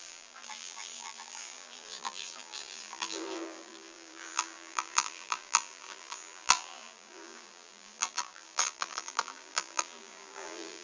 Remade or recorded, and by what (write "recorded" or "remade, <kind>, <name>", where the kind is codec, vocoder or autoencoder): remade, vocoder, BigVGAN v2